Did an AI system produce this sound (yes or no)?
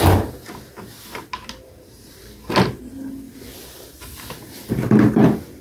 no